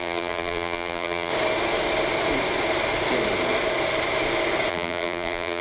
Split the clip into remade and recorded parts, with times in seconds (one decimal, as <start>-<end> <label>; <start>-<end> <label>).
0.0-1.3 remade; 1.3-4.7 recorded; 4.7-5.6 remade